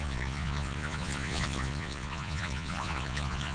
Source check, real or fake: fake